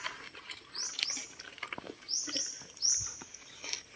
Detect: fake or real real